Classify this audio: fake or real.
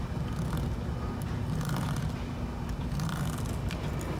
real